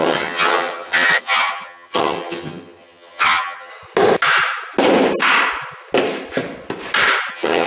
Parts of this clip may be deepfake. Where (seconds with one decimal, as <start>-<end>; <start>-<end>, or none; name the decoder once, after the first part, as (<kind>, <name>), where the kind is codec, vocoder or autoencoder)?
0.0-3.7 (vocoder, HiFi-GAN); 7.3-7.7